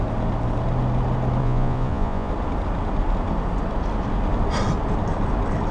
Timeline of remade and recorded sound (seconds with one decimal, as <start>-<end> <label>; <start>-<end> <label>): 0.0-1.4 recorded; 1.4-2.3 remade; 2.3-5.7 recorded